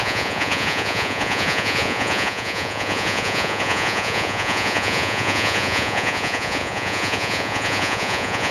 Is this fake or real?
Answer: fake